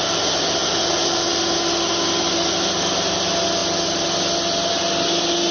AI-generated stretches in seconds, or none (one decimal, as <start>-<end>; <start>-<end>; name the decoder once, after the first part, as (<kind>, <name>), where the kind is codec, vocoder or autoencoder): none